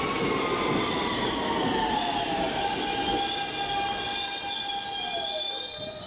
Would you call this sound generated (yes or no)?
no